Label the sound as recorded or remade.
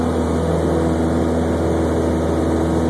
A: recorded